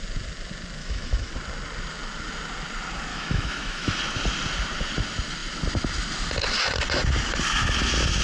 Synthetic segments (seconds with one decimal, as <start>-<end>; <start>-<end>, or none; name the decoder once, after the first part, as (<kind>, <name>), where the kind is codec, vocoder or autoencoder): 0.8-1.3 (autoencoder, DAC-VAE); 3.1-4.0

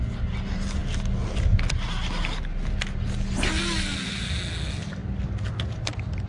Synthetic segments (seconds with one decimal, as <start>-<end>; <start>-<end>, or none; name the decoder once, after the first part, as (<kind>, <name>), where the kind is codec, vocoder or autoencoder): none

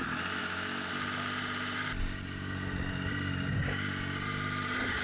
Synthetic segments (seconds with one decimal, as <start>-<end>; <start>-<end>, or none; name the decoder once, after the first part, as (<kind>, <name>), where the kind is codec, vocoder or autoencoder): 0.4-0.9 (autoencoder, DAC-VAE)

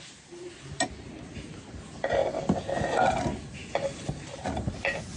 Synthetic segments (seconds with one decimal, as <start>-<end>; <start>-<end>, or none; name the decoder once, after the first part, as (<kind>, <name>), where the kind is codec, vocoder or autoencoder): none

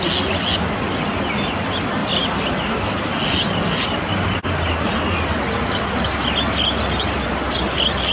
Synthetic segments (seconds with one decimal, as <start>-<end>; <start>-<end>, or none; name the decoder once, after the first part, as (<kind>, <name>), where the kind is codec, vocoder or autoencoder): none